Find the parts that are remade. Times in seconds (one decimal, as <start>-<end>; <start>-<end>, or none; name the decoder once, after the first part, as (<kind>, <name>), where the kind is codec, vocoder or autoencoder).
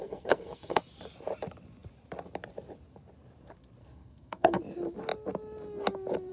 0.0-0.8 (codec, SNAC); 3.8-4.6